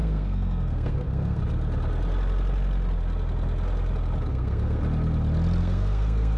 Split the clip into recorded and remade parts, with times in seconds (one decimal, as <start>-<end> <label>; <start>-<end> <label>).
0.0-1.4 remade; 1.4-4.3 recorded; 4.3-4.8 remade; 4.8-5.6 recorded; 5.6-6.4 remade